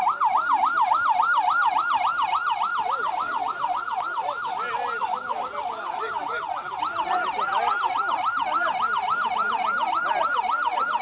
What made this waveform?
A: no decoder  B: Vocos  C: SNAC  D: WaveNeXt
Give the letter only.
A